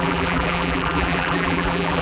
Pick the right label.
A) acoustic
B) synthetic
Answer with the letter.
B